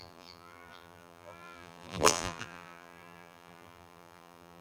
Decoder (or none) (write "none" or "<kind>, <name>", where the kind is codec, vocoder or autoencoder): vocoder, BigVGAN v2